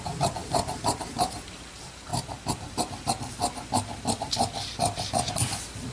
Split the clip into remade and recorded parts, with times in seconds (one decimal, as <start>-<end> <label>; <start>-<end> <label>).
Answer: 0.0-2.1 remade; 2.1-5.9 recorded